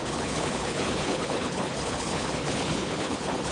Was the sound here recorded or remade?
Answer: remade